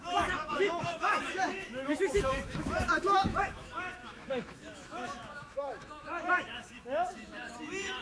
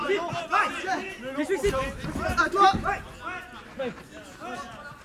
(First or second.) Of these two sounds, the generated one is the first